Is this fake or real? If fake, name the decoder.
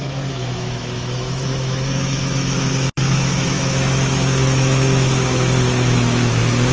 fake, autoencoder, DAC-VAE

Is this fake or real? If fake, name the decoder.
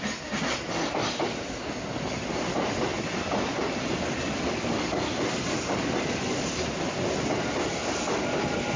real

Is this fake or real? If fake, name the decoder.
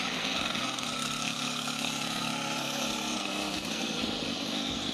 fake, codec, SNAC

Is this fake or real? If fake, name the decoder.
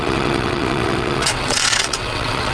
fake, vocoder, WaveNeXt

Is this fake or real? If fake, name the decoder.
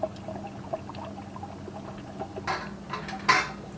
real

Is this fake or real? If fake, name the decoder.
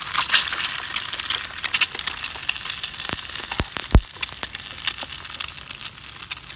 real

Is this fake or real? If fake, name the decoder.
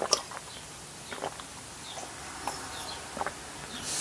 real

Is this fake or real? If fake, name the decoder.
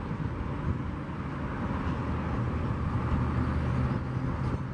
real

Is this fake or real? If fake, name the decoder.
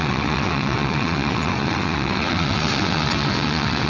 fake, vocoder, WaveNeXt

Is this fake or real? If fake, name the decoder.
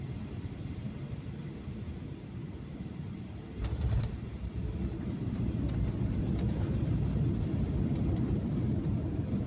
fake, vocoder, BigVGAN v2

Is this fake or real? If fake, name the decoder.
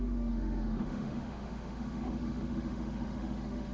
fake, autoencoder, DAC-VAE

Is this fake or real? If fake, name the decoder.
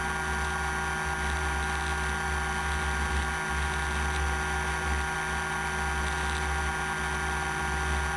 real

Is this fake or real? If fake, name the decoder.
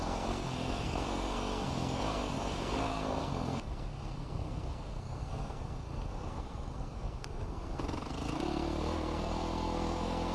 fake, codec, SNAC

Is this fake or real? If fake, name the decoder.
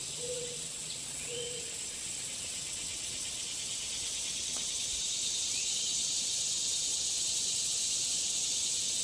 fake, vocoder, WaveNeXt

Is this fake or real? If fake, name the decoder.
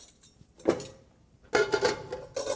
real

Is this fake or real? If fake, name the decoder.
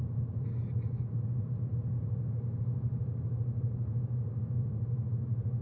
fake, vocoder, BigVGAN v2